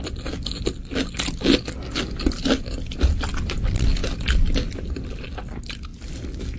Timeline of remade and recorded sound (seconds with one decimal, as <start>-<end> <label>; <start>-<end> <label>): 0.0-6.6 recorded